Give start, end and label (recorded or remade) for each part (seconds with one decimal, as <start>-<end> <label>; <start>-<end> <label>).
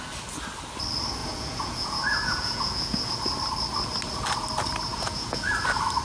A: 0.0-1.2 recorded; 1.2-3.1 remade; 3.1-4.9 recorded; 4.9-5.5 remade; 5.5-6.0 recorded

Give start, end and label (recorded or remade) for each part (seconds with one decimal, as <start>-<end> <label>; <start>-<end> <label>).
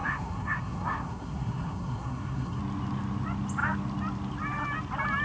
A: 0.0-2.6 remade; 2.6-5.2 recorded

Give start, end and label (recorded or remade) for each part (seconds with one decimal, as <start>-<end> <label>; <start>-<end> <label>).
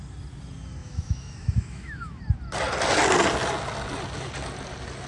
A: 0.0-0.8 recorded; 0.8-2.2 remade; 2.2-5.1 recorded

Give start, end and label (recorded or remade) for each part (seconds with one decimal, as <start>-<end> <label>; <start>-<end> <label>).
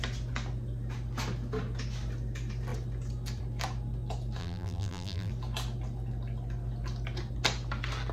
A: 0.0-4.4 recorded; 4.4-5.3 remade; 5.3-8.1 recorded